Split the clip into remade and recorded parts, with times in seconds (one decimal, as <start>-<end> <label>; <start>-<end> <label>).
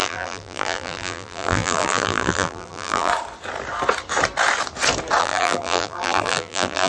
0.0-3.1 remade; 3.1-5.2 recorded; 5.2-6.9 remade